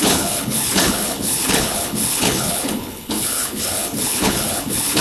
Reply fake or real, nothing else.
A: fake